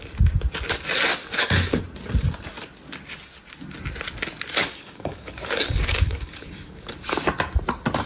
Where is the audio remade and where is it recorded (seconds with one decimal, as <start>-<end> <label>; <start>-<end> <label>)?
0.0-1.2 recorded; 1.2-1.8 remade; 1.8-4.6 recorded; 4.6-6.9 remade; 6.9-8.1 recorded